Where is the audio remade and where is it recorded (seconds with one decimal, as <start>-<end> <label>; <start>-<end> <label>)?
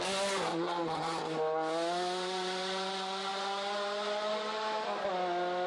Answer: 0.0-0.5 recorded; 0.5-1.2 remade; 1.2-5.7 recorded